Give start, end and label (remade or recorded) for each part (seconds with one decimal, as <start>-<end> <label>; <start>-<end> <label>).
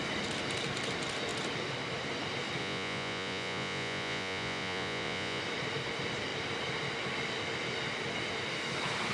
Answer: 0.0-2.6 recorded; 2.6-5.4 remade; 5.4-9.1 recorded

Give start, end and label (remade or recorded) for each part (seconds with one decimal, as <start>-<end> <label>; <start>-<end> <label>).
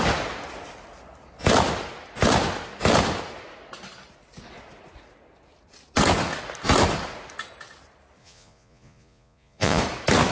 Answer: 0.0-8.2 recorded; 8.2-9.8 remade; 9.8-10.3 recorded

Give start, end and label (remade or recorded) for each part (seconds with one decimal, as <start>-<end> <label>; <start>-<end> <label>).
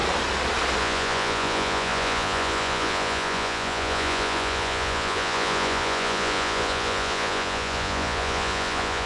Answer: 0.0-0.8 recorded; 0.8-9.1 remade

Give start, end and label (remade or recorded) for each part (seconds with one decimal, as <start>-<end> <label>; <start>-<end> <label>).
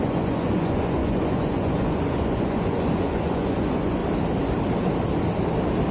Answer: 0.0-4.0 remade; 4.0-5.9 recorded